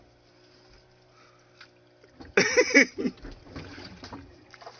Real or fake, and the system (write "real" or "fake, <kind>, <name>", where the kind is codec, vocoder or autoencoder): real